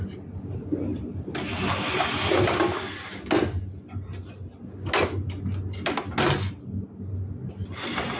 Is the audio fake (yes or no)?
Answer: no